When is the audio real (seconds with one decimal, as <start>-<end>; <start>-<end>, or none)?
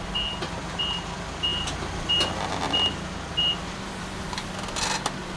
0.0-5.4